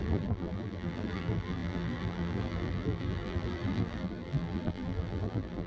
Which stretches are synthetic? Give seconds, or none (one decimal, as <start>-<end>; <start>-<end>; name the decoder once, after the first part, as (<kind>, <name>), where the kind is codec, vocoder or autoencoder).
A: 0.0-5.7 (vocoder, BigVGAN v2)